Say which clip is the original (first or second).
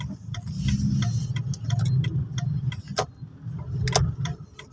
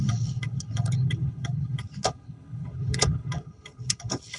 first